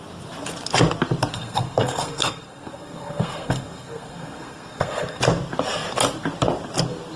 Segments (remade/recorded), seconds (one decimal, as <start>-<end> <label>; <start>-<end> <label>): 0.0-1.3 recorded; 1.3-5.2 remade; 5.2-7.2 recorded